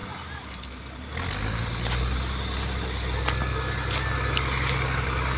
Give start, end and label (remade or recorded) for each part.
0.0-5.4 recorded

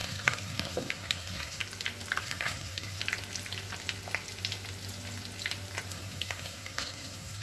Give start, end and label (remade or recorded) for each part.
0.0-1.6 remade; 1.6-2.2 recorded; 2.2-3.0 remade; 3.0-5.9 recorded; 5.9-7.4 remade